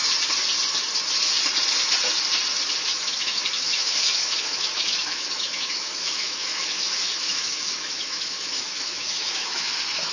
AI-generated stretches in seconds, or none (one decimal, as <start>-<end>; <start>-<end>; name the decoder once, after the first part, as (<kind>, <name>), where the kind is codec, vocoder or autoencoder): 2.9-10.1 (autoencoder, DAC-VAE)